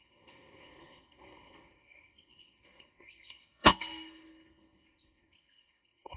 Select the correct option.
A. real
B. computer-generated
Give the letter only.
B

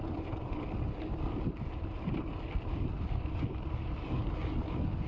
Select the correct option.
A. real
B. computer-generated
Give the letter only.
A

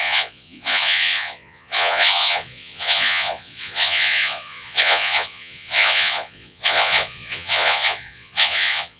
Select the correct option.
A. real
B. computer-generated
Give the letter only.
B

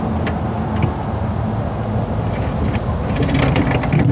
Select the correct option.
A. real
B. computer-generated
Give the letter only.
A